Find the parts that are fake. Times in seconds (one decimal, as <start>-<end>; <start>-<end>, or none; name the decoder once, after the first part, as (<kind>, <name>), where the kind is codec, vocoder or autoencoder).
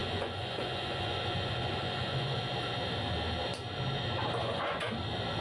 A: 0.0-2.4 (vocoder, Vocos); 4.4-4.9